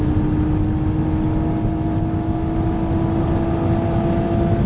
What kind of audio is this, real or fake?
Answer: real